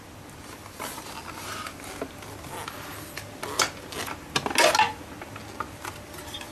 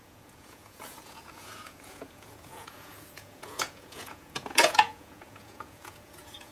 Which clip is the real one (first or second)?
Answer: first